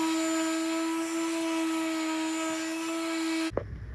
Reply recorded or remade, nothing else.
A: recorded